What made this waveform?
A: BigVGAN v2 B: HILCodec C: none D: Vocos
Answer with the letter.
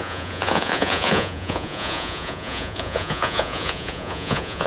D